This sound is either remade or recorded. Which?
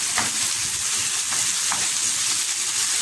recorded